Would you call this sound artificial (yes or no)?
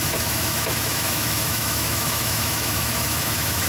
yes